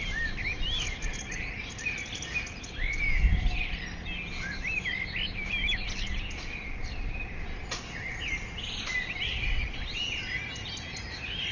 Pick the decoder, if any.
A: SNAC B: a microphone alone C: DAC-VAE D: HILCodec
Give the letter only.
B